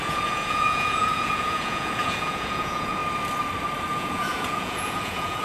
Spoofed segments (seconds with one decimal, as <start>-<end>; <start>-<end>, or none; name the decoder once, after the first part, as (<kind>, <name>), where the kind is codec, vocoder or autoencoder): 0.0-3.0 (vocoder, Vocos); 3.9-5.4